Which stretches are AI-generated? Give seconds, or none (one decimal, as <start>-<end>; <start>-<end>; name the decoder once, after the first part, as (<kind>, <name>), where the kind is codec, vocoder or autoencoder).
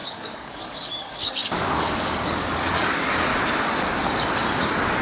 0.0-3.3 (codec, DAC)